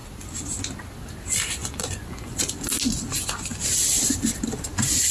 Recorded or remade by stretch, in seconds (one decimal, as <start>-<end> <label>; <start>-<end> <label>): 0.0-1.6 recorded; 1.6-2.4 remade; 2.4-5.1 recorded